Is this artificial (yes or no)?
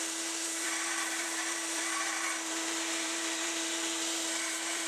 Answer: yes